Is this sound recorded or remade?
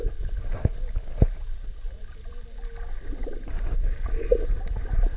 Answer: recorded